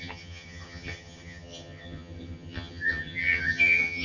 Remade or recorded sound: remade